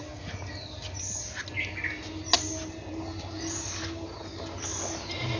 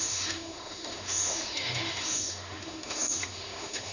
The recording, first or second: first